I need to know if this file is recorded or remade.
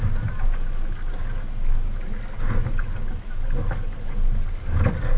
recorded